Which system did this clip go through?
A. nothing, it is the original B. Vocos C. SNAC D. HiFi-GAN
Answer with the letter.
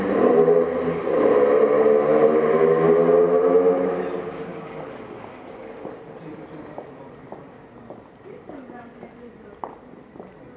A